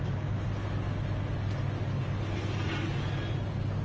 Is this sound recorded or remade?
recorded